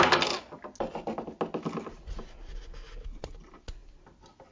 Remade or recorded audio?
recorded